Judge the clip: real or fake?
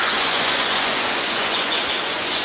fake